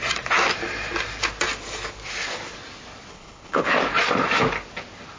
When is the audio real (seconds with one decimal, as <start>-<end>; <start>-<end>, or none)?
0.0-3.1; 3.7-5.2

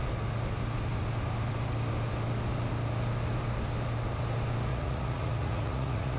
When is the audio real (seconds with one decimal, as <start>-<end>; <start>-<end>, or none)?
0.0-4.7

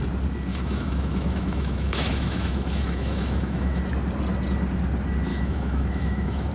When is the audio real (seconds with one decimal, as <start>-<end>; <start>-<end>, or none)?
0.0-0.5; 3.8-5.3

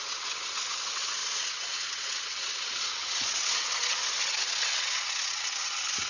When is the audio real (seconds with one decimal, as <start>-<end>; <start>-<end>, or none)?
none